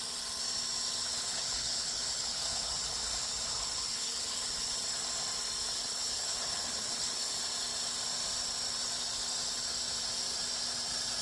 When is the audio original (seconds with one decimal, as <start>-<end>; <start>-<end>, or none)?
0.0-1.0; 4.7-5.8; 7.3-11.2

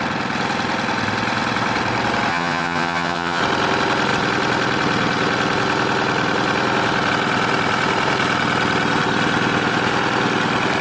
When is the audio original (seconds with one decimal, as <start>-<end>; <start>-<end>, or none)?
0.0-2.3; 3.4-10.8